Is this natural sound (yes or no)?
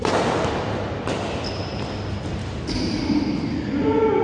yes